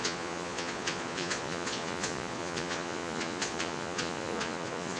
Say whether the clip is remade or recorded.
remade